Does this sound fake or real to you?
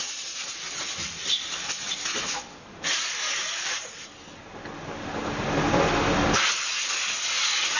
real